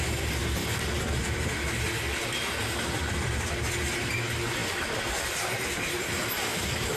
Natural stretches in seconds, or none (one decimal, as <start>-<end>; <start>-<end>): 0.0-7.0